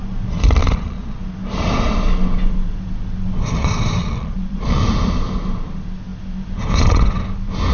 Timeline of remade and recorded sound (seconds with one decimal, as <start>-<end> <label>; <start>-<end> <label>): 0.0-0.6 recorded; 0.6-1.2 remade; 1.2-4.0 recorded; 4.0-4.8 remade; 4.8-7.7 recorded